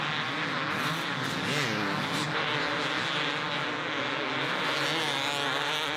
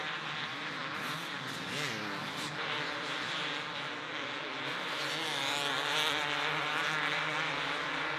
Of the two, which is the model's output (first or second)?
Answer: second